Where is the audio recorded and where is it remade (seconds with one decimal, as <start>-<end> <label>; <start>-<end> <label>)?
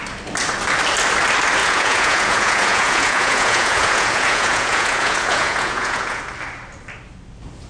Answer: 0.0-1.6 recorded; 1.6-6.2 remade; 6.2-7.7 recorded